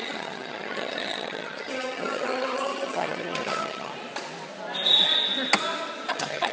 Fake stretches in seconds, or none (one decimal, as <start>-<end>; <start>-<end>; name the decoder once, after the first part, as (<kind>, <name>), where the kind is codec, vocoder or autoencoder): 0.0-3.9 (vocoder, HiFi-GAN); 6.1-6.5